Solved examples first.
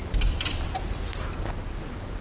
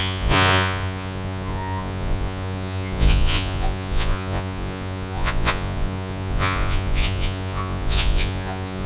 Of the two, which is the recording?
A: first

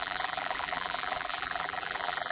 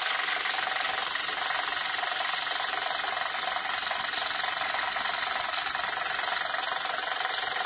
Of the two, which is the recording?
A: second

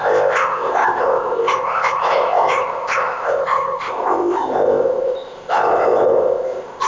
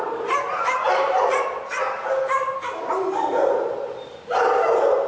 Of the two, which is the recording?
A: second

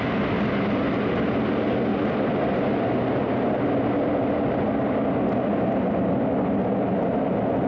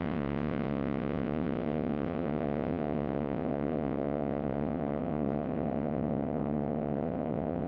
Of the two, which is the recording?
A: first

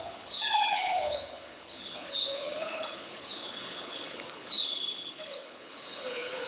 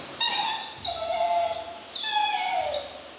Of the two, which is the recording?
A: second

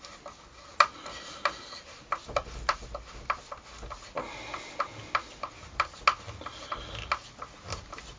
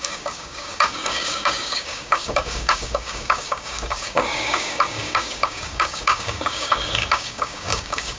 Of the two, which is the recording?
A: first